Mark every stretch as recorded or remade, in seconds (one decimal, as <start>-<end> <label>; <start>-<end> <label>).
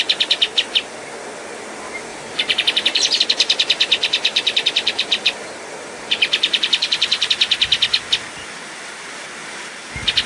0.0-2.1 recorded; 2.1-3.2 remade; 3.2-4.0 recorded; 4.0-7.3 remade; 7.3-10.3 recorded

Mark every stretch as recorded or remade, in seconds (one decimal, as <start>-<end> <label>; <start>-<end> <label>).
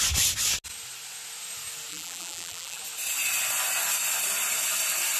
0.0-1.9 recorded; 1.9-2.8 remade; 2.8-5.2 recorded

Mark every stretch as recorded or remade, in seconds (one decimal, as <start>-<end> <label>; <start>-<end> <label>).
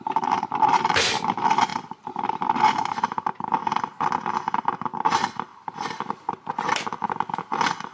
0.0-3.6 remade; 3.6-4.6 recorded; 4.6-7.9 remade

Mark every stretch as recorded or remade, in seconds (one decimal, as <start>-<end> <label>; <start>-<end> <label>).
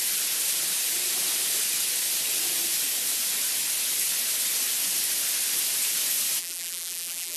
0.0-6.4 recorded; 6.4-7.4 remade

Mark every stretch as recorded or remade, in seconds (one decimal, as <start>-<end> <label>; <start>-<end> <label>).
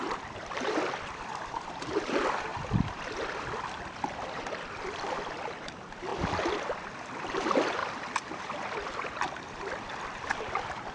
0.0-7.8 remade; 7.8-8.4 recorded; 8.4-10.9 remade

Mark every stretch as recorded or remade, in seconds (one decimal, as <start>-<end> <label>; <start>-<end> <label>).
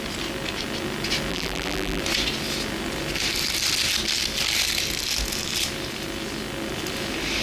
0.0-1.3 recorded; 1.3-2.0 remade; 2.0-7.4 recorded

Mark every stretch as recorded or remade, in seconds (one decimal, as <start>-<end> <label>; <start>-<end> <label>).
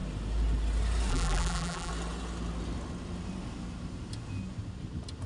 0.0-1.1 recorded; 1.1-1.9 remade; 1.9-5.3 recorded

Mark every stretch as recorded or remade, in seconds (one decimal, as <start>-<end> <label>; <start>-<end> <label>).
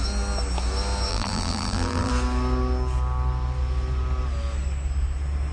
0.0-1.1 recorded; 1.1-2.1 remade; 2.1-5.5 recorded